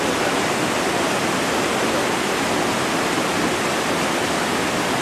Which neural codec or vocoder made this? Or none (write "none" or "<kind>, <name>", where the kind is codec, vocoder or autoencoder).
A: none